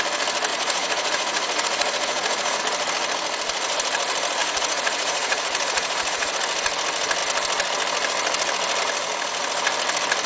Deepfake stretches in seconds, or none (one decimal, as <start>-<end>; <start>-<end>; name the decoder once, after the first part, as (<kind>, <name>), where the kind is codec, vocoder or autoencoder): 0.5-2.6 (vocoder, Vocos); 4.4-6.3